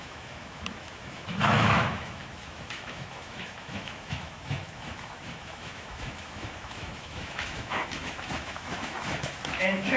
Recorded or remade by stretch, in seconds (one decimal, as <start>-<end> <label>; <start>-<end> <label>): 0.0-10.0 remade